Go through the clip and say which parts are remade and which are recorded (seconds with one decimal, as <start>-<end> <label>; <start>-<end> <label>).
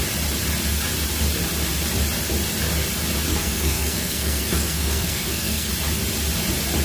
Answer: 0.0-3.3 recorded; 3.3-5.7 remade; 5.7-6.8 recorded